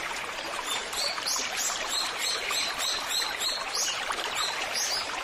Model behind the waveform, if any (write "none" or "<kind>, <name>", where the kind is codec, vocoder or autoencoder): vocoder, BigVGAN v2